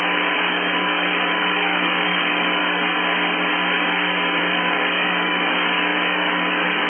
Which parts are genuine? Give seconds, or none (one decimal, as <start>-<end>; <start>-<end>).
2.6-4.4